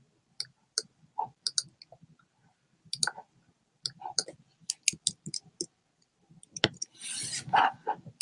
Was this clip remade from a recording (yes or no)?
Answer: yes